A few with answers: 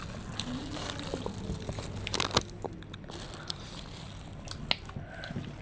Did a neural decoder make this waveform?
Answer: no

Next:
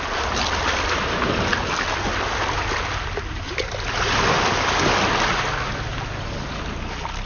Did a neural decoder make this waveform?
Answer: no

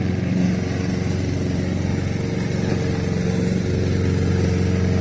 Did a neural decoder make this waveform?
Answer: no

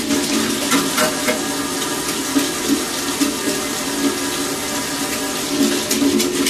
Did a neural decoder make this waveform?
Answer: no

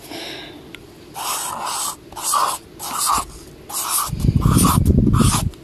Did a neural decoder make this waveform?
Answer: no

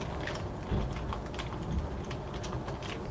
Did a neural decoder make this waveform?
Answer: no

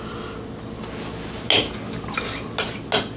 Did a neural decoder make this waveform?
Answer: no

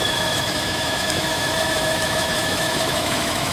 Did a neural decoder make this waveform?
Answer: yes